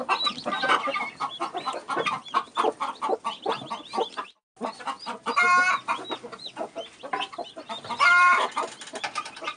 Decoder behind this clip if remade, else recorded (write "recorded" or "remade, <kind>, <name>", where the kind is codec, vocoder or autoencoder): recorded